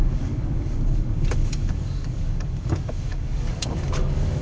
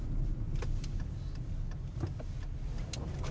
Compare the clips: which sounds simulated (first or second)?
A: first